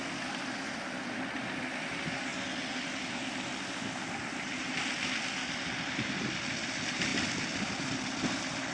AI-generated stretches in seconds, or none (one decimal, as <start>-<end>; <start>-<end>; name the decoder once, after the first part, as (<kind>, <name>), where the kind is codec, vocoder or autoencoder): none